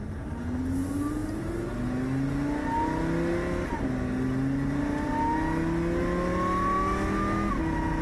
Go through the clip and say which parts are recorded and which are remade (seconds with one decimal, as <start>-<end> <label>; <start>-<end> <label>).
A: 0.0-8.0 recorded